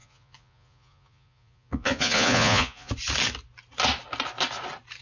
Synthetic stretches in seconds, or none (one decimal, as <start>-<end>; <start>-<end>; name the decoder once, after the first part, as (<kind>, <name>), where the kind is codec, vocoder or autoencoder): 0.0-2.9 (vocoder, Vocos)